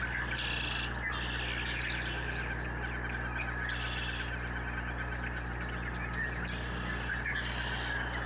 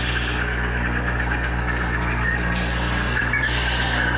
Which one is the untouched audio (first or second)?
first